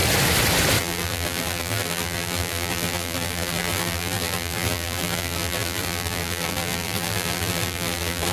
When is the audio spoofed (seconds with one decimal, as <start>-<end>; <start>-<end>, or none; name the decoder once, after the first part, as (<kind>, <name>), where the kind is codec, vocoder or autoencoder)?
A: 0.8-8.3 (vocoder, BigVGAN v2)

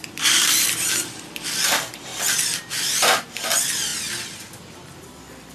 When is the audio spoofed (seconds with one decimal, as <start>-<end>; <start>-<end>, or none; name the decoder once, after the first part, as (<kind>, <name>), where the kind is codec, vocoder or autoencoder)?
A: 0.0-5.5 (vocoder, BigVGAN v2)

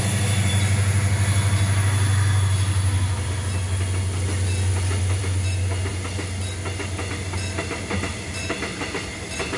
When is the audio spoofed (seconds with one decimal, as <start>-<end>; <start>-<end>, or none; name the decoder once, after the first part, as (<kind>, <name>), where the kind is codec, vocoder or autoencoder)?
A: none

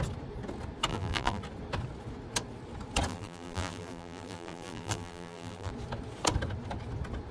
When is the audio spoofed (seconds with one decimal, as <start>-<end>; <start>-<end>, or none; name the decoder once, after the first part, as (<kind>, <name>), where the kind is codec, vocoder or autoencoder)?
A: 0.9-1.4 (vocoder, BigVGAN v2); 3.1-5.7

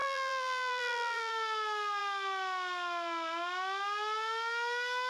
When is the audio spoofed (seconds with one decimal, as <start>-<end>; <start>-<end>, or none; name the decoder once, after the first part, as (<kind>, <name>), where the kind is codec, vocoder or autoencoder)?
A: 0.0-1.3 (vocoder, BigVGAN v2)

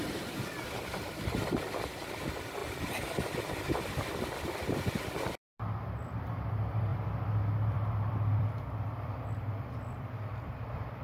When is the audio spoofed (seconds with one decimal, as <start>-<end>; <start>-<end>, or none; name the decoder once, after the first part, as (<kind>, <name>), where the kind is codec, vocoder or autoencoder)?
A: 0.0-11.0 (vocoder, BigVGAN v2)

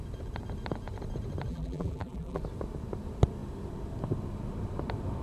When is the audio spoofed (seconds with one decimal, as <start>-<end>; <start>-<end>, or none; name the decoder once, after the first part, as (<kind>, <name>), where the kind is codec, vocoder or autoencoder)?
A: 1.5-2.4 (vocoder, BigVGAN v2)

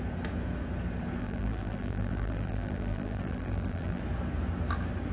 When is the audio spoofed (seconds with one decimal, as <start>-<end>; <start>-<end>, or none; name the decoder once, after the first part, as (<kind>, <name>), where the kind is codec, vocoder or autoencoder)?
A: 1.2-4.0 (vocoder, BigVGAN v2)